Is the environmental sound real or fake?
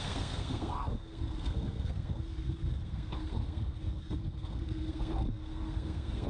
fake